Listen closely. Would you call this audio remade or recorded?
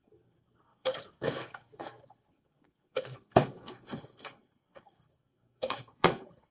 remade